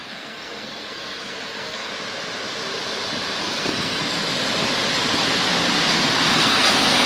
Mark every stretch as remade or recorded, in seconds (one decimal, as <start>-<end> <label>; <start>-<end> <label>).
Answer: 0.0-1.9 remade; 1.9-3.4 recorded; 3.4-4.0 remade; 4.0-6.3 recorded; 6.3-7.1 remade